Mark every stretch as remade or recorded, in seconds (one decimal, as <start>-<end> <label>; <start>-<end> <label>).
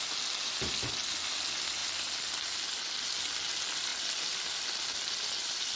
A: 0.0-5.8 recorded